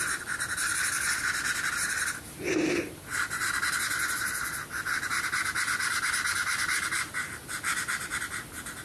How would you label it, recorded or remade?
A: recorded